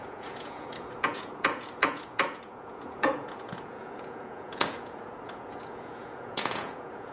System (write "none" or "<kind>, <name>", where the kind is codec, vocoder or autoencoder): vocoder, Vocos